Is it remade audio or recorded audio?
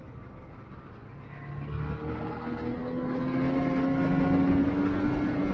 recorded